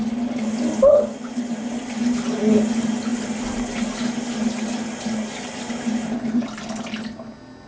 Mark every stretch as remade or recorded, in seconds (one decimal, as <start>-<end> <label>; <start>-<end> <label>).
0.0-7.7 recorded